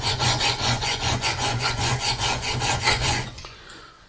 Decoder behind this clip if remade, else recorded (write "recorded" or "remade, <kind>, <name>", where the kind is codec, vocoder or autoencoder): remade, vocoder, Vocos